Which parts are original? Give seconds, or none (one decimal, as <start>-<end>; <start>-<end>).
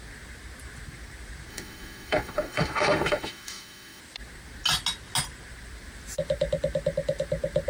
0.0-1.5; 4.0-7.7